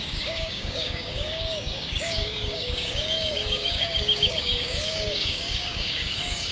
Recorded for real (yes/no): no